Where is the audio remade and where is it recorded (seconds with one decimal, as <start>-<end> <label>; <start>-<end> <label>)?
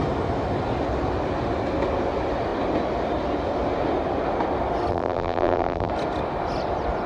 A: 0.0-4.9 recorded; 4.9-5.9 remade; 5.9-7.1 recorded